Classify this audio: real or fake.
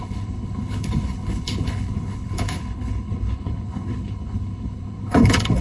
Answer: fake